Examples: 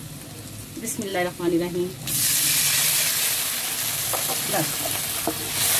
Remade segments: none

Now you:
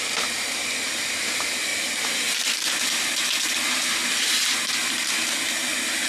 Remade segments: none

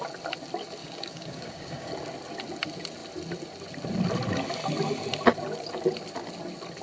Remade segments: 0.8-1.9 (codec, DAC)